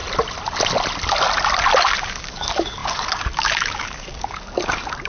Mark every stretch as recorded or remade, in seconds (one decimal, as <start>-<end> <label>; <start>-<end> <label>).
0.0-1.8 recorded; 1.8-5.1 remade